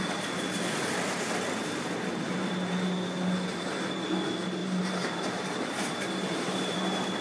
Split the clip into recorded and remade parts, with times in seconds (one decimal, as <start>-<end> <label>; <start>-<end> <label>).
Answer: 0.0-1.6 recorded; 1.6-2.5 remade; 2.5-4.6 recorded; 4.6-6.8 remade; 6.8-7.2 recorded

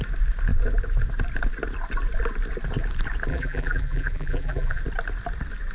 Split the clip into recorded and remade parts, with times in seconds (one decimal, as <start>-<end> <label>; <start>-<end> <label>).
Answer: 0.0-3.3 recorded; 3.3-4.8 remade; 4.8-5.7 recorded

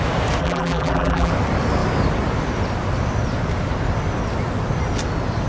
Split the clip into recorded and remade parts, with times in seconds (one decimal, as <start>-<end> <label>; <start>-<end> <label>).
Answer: 0.0-0.4 recorded; 0.4-1.3 remade; 1.3-5.5 recorded

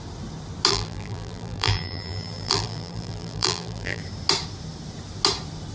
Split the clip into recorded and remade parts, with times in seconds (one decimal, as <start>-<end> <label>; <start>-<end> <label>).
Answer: 0.0-0.7 recorded; 0.7-4.0 remade; 4.0-5.7 recorded